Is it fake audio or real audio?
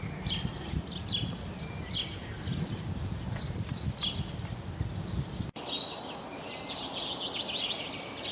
real